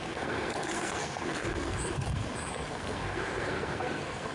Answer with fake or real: fake